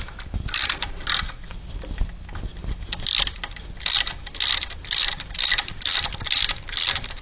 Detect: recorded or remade recorded